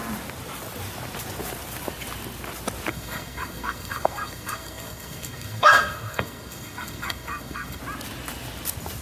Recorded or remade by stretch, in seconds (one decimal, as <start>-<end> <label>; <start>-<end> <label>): 0.0-2.9 recorded; 2.9-7.8 remade; 7.8-9.0 recorded